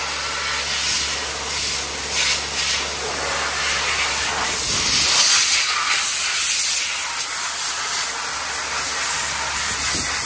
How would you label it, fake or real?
real